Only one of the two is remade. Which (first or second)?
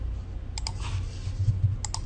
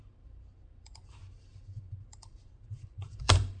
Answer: second